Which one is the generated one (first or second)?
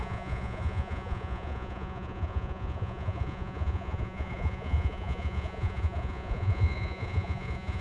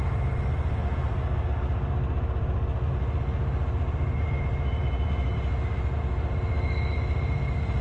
first